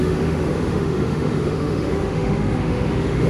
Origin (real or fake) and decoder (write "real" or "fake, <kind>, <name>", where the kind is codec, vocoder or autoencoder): fake, autoencoder, DAC-VAE